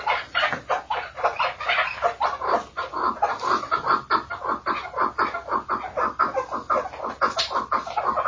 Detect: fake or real real